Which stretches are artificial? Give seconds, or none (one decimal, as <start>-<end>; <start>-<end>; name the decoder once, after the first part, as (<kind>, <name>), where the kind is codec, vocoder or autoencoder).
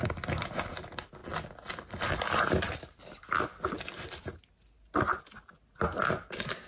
none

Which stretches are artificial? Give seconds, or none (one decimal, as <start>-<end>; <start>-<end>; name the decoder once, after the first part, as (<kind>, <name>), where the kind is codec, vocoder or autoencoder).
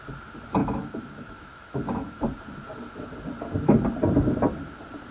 0.6-2.2 (autoencoder, DAC-VAE)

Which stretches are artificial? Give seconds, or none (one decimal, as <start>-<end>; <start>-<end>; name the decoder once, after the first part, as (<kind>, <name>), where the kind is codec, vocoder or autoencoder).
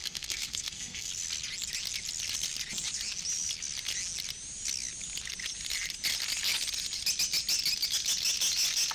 0.0-1.1 (codec, SNAC)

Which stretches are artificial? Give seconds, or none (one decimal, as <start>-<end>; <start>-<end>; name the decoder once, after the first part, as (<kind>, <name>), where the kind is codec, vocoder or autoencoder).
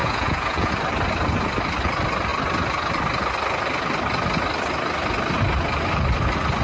0.0-0.7 (vocoder, Vocos)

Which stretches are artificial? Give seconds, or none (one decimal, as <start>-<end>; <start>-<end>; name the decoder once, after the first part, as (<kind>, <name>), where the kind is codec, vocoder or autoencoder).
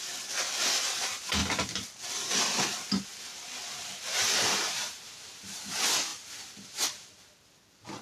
3.1-5.6 (vocoder, BigVGAN v2); 6.1-7.3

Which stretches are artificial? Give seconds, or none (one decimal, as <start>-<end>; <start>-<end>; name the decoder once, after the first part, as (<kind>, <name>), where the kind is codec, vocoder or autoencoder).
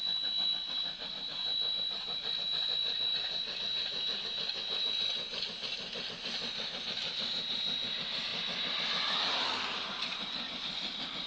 8.3-8.9 (vocoder, BigVGAN v2)